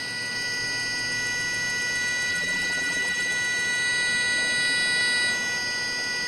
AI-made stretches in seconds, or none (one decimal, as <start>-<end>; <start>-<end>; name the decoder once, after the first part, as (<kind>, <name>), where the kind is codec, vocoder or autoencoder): 2.3-3.3 (vocoder, BigVGAN v2)